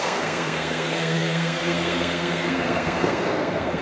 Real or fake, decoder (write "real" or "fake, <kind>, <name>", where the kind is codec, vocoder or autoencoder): fake, codec, SNAC